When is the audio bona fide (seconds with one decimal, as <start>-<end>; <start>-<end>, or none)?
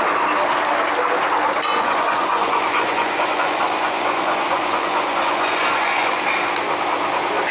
0.0-1.7; 6.2-7.5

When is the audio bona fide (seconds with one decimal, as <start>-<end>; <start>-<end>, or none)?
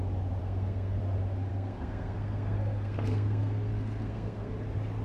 0.0-0.4; 1.0-1.5; 4.5-5.0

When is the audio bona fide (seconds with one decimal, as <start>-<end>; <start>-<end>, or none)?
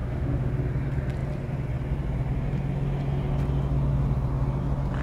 0.5-5.0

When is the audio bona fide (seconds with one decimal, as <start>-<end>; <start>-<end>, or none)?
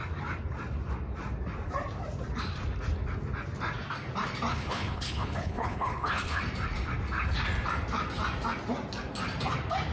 0.0-4.5; 6.4-9.9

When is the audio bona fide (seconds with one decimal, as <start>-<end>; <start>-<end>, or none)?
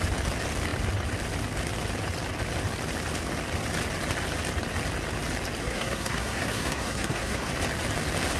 0.0-5.6; 7.5-8.4